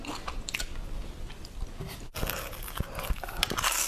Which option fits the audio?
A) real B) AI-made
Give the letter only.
A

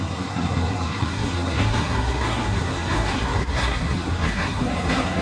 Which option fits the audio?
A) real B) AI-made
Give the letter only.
B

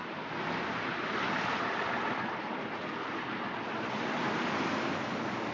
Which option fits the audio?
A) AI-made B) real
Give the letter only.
B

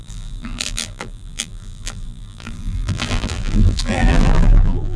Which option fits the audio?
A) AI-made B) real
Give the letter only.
A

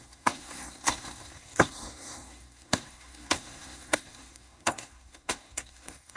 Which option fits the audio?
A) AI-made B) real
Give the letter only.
A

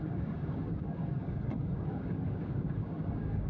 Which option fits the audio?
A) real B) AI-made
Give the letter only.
B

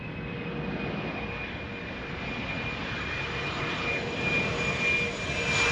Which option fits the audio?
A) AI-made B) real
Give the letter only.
B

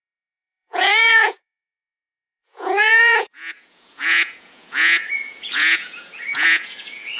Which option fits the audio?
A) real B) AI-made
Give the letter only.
B